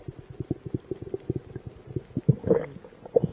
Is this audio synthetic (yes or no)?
no